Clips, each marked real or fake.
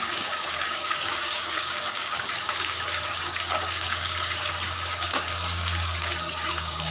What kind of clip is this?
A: fake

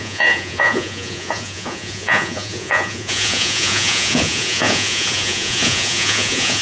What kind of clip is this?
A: fake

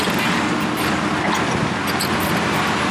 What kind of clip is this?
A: real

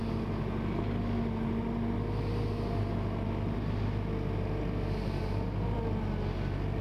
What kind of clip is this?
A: real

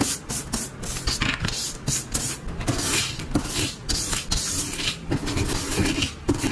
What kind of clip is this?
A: real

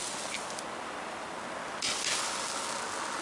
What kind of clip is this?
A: real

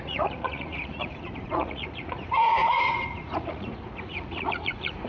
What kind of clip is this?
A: fake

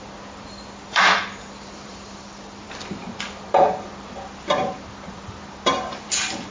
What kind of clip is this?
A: fake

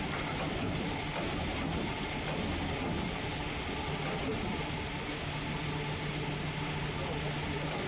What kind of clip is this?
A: real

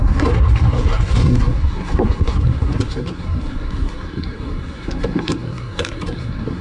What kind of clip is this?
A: fake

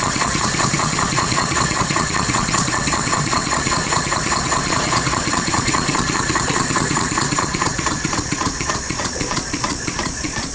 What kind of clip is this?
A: fake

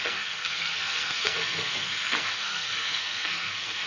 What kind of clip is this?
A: fake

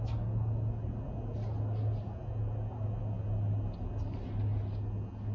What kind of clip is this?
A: real